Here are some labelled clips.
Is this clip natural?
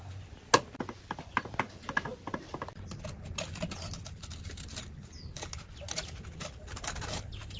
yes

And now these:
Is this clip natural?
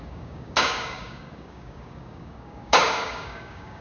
no